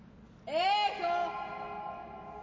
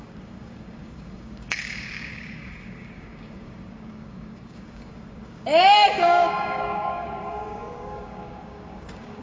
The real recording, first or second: first